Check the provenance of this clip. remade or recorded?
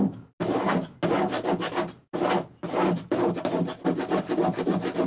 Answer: recorded